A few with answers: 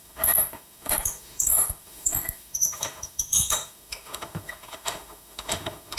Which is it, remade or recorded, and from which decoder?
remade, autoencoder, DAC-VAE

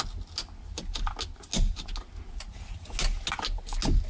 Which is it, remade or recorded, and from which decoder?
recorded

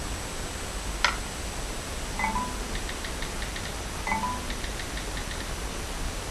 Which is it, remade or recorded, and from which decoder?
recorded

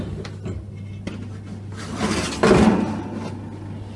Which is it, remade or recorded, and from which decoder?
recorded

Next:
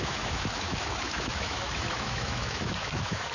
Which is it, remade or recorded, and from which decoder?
remade, autoencoder, DAC-VAE